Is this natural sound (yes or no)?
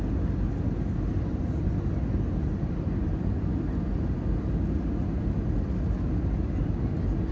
yes